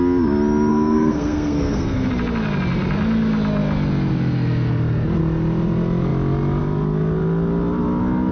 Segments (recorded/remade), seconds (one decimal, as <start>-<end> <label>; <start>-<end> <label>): 0.0-0.7 recorded; 0.7-2.1 remade; 2.1-8.3 recorded